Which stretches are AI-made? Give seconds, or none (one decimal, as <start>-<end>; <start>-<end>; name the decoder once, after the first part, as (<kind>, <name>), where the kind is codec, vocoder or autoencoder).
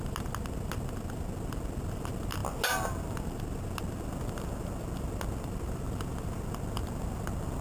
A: none